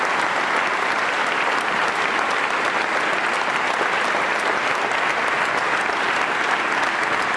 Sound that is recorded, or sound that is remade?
recorded